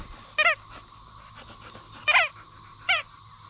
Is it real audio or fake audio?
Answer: real